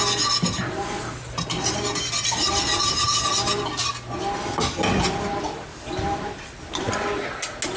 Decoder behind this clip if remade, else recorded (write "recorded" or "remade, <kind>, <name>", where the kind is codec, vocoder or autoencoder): recorded